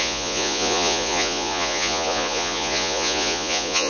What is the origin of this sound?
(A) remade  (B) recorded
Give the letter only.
A